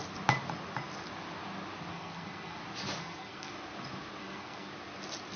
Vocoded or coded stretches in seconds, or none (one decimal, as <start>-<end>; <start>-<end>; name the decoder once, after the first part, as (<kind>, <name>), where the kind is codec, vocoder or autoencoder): 1.9-2.6 (codec, SNAC); 3.0-3.5; 4.2-4.7